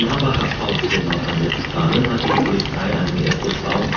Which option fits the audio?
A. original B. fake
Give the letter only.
A